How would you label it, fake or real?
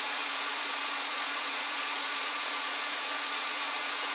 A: fake